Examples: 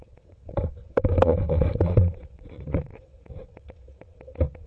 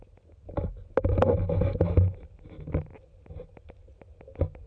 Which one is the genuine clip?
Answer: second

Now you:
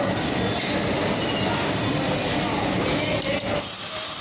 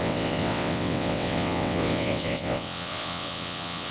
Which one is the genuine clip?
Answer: first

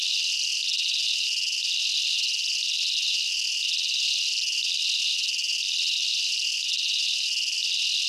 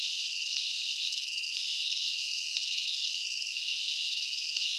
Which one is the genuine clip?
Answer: first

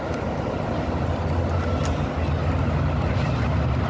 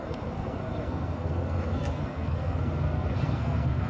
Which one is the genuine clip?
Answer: first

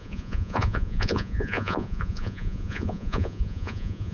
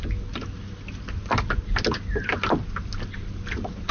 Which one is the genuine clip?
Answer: second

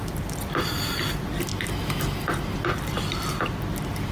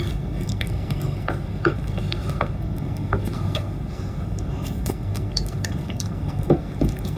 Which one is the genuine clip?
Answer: first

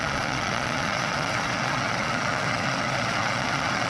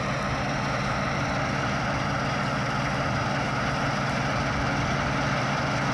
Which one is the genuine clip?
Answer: second